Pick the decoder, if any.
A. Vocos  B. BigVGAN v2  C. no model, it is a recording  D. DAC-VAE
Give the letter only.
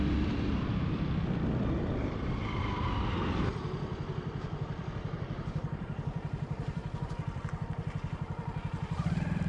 B